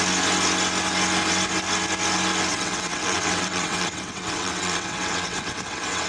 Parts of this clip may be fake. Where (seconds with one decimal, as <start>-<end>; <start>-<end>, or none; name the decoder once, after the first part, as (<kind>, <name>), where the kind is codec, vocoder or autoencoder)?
2.5-6.1 (vocoder, WaveNeXt)